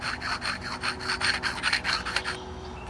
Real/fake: real